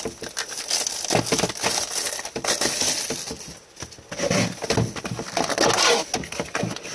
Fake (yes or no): no